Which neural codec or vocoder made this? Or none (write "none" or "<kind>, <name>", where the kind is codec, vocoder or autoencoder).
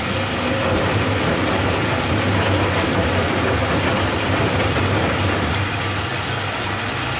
none